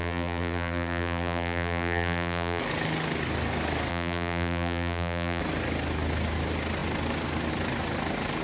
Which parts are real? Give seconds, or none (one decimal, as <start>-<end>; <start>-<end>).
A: 2.6-3.9; 5.4-8.4